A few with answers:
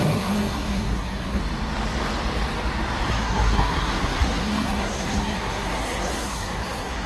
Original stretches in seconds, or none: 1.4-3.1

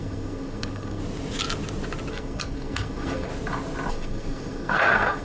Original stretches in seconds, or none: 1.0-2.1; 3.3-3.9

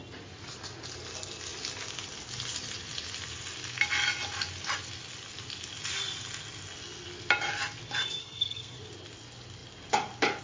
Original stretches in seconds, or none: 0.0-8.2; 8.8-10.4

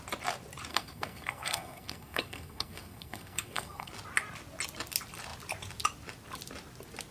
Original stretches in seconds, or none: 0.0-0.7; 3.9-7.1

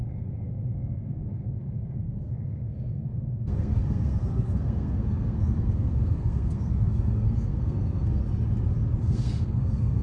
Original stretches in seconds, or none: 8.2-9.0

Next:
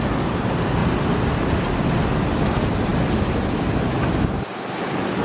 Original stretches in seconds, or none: 0.0-5.2